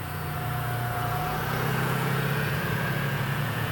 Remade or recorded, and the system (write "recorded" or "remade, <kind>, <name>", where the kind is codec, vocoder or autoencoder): remade, vocoder, Vocos